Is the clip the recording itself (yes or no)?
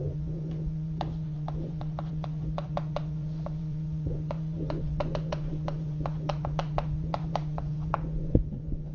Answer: no